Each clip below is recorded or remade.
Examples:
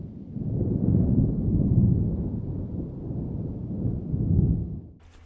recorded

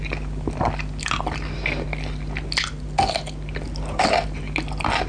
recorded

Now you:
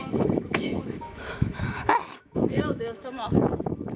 remade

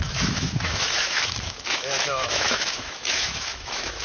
remade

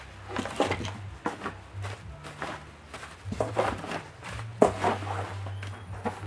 recorded